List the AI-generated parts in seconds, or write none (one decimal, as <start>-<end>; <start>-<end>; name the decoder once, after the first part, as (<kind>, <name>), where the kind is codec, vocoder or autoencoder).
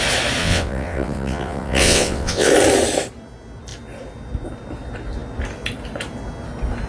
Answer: 0.4-2.5 (vocoder, WaveNeXt)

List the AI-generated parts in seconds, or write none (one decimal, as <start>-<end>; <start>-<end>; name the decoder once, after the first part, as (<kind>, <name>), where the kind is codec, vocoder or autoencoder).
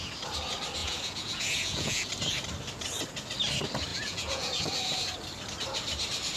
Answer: 0.8-2.1 (vocoder, Vocos); 3.9-4.6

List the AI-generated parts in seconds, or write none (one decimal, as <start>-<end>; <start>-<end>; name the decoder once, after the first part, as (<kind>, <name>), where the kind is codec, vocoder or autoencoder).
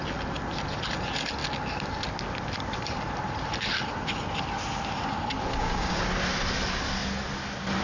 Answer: 5.5-6.0 (codec, DAC)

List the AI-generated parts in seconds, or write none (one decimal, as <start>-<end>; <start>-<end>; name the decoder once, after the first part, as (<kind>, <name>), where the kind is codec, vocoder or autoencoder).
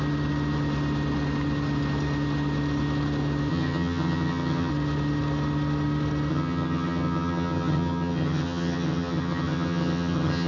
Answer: 3.5-4.7 (vocoder, HiFi-GAN); 6.3-10.5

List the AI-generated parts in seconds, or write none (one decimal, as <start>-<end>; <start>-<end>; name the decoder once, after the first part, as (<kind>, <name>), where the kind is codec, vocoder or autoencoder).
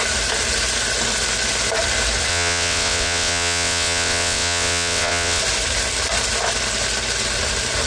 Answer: 2.3-5.4 (vocoder, WaveNeXt)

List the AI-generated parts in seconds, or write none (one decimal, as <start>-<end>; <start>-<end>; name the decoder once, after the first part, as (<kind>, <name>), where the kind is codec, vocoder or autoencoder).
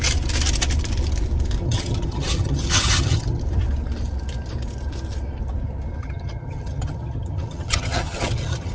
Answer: 1.6-3.4 (vocoder, HiFi-GAN); 6.0-8.7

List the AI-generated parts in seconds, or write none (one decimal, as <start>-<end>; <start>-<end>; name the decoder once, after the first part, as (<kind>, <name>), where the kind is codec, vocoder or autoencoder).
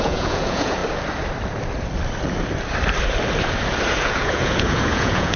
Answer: 0.0-0.8 (vocoder, Vocos); 4.0-5.4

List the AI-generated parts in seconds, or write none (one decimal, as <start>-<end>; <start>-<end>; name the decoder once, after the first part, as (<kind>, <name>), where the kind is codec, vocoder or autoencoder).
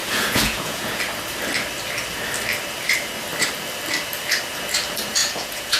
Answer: 0.0-1.0 (vocoder, Vocos); 5.2-5.8